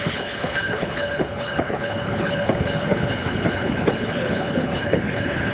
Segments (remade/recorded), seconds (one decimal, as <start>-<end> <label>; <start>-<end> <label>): 0.0-5.5 remade